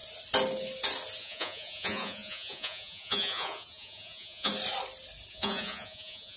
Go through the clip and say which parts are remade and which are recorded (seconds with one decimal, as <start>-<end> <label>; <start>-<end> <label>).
0.0-1.2 recorded; 1.2-4.5 remade; 4.5-5.3 recorded; 5.3-6.4 remade